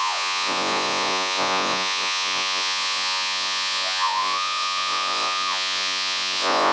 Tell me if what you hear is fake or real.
fake